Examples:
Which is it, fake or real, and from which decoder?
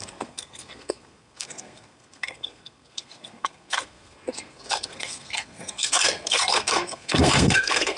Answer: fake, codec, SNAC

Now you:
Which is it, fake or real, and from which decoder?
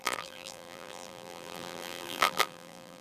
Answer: fake, vocoder, BigVGAN v2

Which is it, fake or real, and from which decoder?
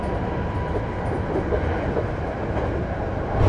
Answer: real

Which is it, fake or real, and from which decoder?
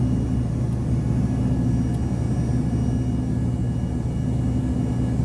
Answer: real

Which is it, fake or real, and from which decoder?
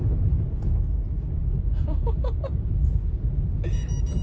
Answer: real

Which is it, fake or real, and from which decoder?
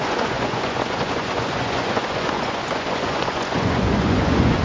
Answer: fake, vocoder, Vocos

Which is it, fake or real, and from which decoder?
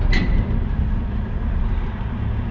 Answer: real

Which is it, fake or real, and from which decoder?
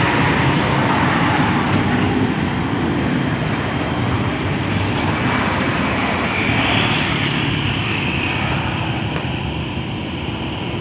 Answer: fake, vocoder, BigVGAN v2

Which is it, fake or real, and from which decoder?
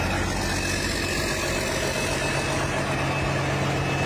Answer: real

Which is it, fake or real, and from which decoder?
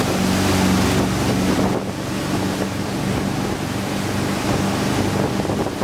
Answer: real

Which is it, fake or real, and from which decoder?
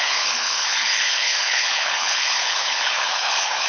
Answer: fake, codec, HILCodec